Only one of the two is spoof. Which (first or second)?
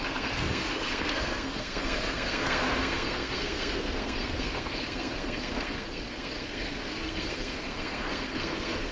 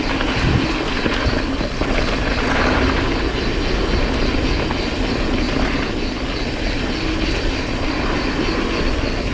first